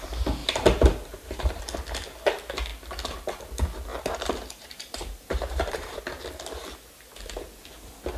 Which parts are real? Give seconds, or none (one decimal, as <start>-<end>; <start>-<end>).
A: 0.0-0.4; 1.6-3.9; 6.0-8.2